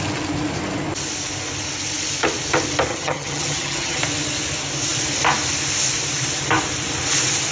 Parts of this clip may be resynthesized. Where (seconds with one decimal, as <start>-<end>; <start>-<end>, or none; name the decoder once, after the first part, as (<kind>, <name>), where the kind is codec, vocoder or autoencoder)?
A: 2.9-4.0 (vocoder, HiFi-GAN)